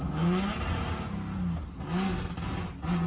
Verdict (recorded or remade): recorded